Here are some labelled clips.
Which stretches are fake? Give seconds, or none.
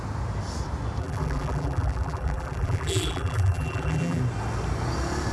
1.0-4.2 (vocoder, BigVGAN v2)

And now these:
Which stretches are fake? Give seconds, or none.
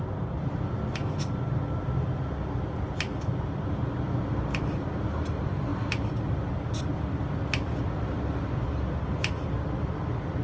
none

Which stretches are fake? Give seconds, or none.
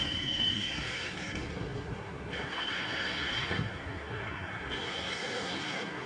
0.0-6.1 (codec, SNAC)